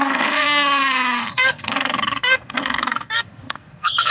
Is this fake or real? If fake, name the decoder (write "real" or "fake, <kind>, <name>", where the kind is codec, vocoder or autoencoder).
fake, codec, SNAC